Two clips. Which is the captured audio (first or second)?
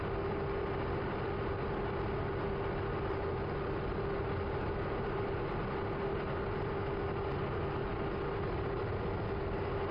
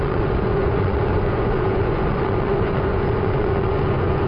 first